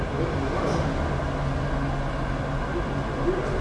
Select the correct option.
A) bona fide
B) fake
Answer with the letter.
A